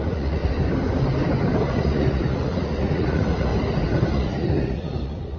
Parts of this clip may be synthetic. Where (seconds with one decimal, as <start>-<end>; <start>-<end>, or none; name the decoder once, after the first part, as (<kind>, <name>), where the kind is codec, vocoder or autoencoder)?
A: 0.0-0.4 (vocoder, Vocos); 1.6-3.5; 4.1-5.4